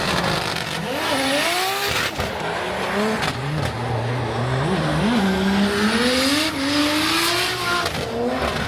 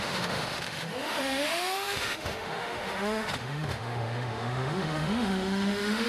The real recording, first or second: first